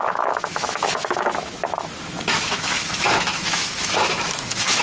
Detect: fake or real fake